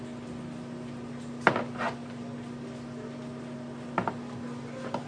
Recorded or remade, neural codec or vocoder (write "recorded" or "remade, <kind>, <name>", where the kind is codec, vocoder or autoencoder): recorded